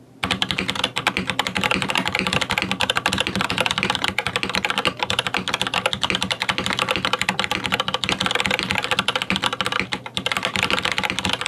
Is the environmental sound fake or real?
real